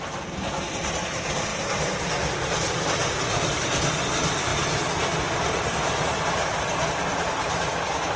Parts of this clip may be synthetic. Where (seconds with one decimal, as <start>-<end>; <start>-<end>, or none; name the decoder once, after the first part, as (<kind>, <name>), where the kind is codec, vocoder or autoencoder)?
none